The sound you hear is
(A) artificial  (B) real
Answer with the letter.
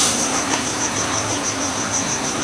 A